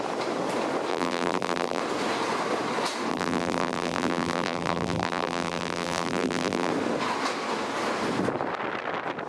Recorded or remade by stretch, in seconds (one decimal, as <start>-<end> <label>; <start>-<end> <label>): 0.0-0.9 recorded; 0.9-1.8 remade; 1.8-3.1 recorded; 3.1-6.7 remade; 6.7-9.3 recorded